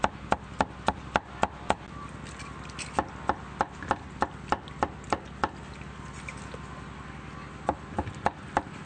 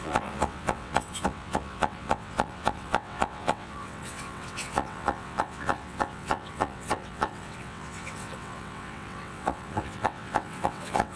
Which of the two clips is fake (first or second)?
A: second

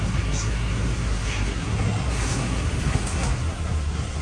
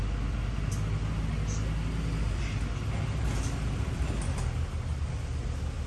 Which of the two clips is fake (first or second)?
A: first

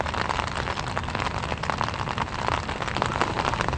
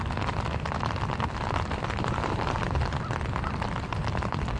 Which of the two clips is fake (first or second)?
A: second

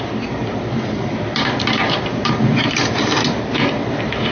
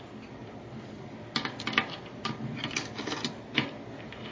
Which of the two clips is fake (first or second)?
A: first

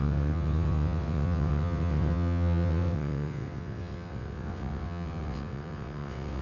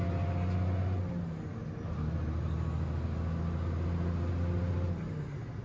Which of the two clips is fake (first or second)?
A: first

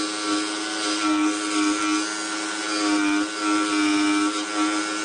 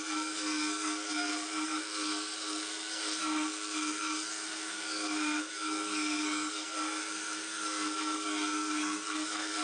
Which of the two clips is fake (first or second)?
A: second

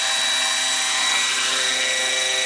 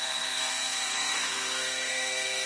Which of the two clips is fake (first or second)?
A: second